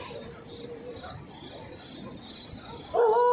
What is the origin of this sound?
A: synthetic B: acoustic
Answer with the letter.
B